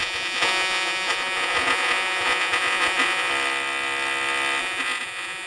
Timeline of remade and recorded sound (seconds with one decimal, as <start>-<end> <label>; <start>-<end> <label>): 0.0-3.3 remade; 3.3-4.6 recorded; 4.6-5.5 remade